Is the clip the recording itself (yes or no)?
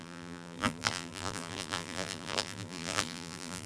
no